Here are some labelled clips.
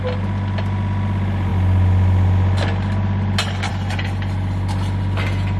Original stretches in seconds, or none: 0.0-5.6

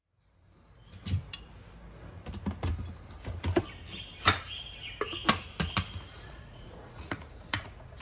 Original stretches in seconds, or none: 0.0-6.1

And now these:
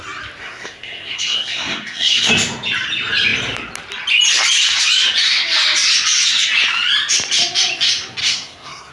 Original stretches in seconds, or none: 0.0-0.4; 2.3-8.2